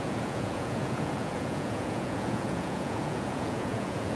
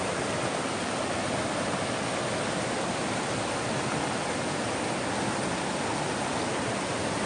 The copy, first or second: first